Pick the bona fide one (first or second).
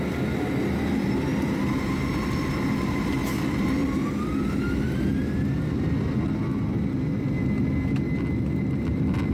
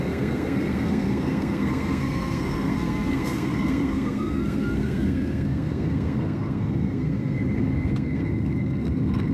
first